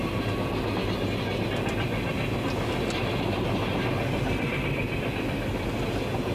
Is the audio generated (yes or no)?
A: no